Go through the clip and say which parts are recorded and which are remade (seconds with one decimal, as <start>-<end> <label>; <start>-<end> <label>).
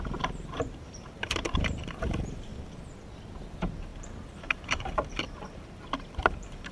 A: 0.0-2.5 remade; 2.5-3.5 recorded; 3.5-6.7 remade